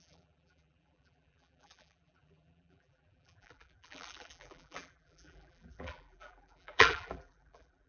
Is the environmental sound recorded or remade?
remade